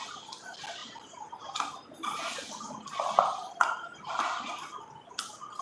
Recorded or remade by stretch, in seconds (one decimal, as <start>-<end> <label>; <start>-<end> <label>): 0.0-5.6 recorded